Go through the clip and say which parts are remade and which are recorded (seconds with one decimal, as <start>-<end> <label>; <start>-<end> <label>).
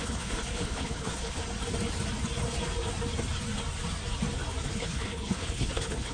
0.0-1.4 remade; 1.4-4.7 recorded; 4.7-6.1 remade